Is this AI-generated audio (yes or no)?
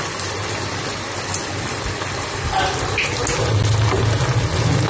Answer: no